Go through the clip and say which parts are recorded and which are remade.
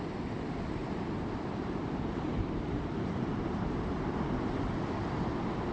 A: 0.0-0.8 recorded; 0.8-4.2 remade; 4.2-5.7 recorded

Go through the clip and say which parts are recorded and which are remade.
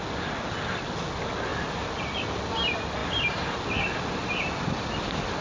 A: 0.0-1.5 recorded; 1.5-2.0 remade; 2.0-3.0 recorded; 3.0-3.6 remade; 3.6-5.4 recorded